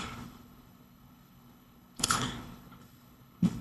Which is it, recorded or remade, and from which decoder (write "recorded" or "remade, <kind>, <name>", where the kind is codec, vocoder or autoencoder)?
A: remade, codec, HILCodec